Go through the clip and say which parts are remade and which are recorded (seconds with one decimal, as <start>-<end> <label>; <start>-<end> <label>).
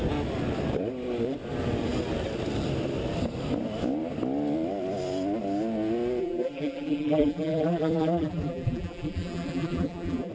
0.0-6.2 recorded; 6.2-10.3 remade